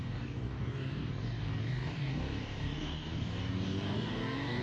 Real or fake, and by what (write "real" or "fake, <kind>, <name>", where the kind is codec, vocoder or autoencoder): fake, codec, DAC